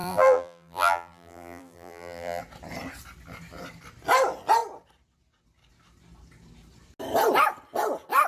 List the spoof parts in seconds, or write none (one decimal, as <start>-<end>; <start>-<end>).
0.0-2.4